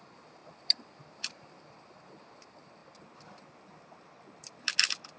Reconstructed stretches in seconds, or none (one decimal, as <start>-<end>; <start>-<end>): none